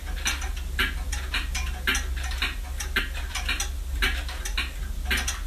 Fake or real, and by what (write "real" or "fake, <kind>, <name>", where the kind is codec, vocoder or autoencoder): real